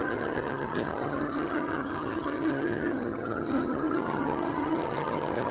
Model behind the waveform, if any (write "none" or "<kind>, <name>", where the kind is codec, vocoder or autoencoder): vocoder, HiFi-GAN